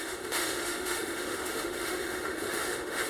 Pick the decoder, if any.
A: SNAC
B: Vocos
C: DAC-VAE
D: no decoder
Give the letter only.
C